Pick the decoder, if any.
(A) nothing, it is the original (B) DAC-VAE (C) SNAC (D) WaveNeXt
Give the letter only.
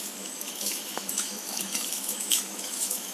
B